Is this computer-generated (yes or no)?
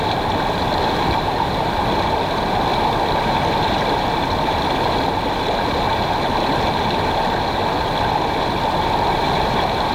no